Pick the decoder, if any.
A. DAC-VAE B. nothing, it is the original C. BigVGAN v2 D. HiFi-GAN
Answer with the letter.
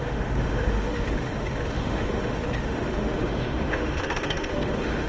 A